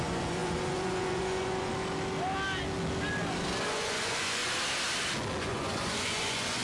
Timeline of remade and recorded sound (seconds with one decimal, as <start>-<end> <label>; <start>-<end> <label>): 0.0-1.7 remade; 1.7-3.7 recorded; 3.7-4.4 remade; 4.4-5.4 recorded; 5.4-6.6 remade